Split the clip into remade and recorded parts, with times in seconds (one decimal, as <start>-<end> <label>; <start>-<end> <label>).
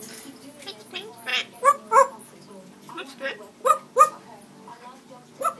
0.0-5.6 recorded